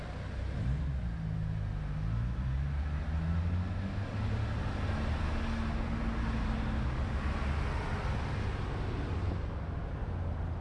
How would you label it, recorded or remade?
recorded